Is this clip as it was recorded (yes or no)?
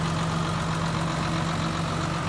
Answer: yes